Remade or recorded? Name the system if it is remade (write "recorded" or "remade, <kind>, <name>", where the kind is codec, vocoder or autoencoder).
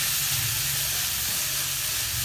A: recorded